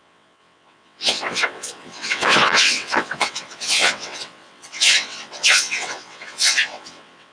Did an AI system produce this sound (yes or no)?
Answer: yes